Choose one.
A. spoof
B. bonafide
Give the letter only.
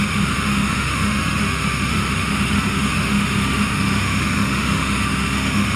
A